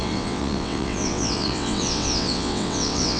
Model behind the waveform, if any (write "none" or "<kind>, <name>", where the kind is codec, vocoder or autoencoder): vocoder, WaveNeXt